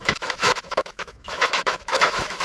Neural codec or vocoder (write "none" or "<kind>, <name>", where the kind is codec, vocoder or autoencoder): autoencoder, DAC-VAE